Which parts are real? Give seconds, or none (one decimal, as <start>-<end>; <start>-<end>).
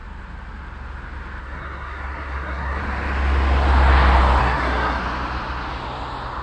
0.0-1.4; 2.8-4.4; 5.0-6.4